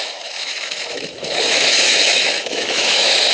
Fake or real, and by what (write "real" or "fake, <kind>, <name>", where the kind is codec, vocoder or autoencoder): fake, autoencoder, DAC-VAE